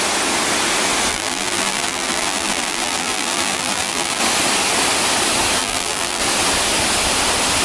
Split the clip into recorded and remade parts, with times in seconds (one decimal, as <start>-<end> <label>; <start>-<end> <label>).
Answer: 0.0-1.1 recorded; 1.1-4.2 remade; 4.2-5.6 recorded; 5.6-6.2 remade; 6.2-7.6 recorded